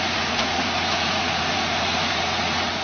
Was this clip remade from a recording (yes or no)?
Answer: yes